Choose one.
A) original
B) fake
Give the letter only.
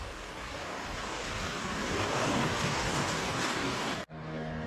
B